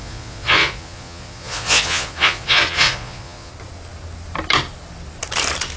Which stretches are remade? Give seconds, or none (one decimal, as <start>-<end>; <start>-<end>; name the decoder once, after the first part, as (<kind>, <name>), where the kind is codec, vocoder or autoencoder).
0.0-3.5 (vocoder, Vocos)